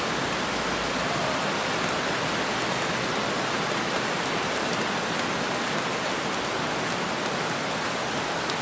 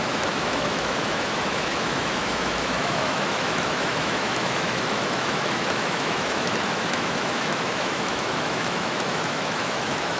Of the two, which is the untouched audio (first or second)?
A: first